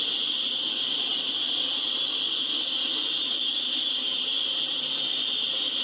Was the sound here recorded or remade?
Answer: recorded